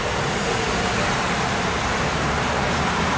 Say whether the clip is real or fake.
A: fake